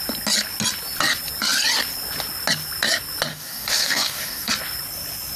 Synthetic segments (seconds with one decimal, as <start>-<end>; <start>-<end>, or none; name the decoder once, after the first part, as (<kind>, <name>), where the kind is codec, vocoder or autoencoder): 3.3-4.5 (codec, DAC)

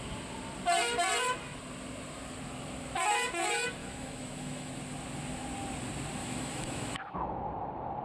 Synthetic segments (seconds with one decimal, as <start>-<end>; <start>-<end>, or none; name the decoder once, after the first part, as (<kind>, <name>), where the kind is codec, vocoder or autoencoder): 3.8-4.7 (autoencoder, DAC-VAE); 6.2-7.4

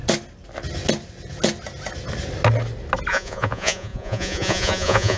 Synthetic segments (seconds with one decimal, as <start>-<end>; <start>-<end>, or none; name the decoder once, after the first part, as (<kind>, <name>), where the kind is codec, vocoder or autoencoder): 3.1-5.2 (vocoder, Vocos)

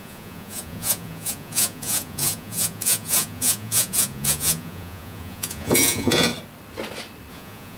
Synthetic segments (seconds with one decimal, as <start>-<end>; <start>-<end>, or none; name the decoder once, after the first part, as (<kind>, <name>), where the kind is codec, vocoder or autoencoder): 0.0-6.3 (vocoder, Vocos); 7.3-7.8

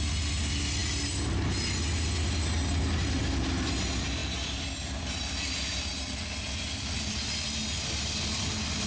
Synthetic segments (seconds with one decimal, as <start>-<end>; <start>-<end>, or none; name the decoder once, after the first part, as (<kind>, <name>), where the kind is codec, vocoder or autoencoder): none